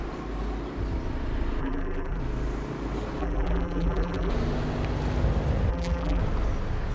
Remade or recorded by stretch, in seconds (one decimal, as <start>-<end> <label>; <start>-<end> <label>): 0.0-1.6 recorded; 1.6-2.2 remade; 2.2-3.2 recorded; 3.2-4.3 remade; 4.3-5.7 recorded; 5.7-6.2 remade; 6.2-6.9 recorded